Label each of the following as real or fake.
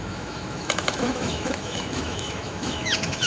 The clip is fake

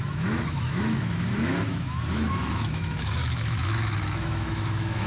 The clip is fake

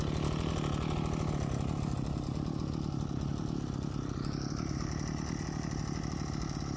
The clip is real